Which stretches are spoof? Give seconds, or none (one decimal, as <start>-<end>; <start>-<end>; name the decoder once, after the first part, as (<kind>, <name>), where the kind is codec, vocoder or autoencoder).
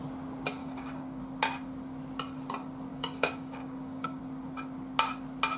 0.6-1.2 (codec, DAC); 2.9-4.2